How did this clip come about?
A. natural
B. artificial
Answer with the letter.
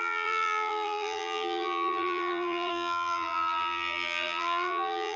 B